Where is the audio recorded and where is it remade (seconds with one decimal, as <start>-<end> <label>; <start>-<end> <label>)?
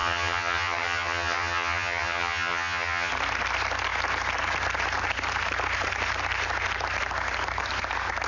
0.0-3.1 remade; 3.1-8.3 recorded